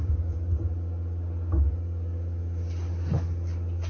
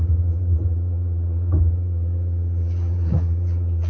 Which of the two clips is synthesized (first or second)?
second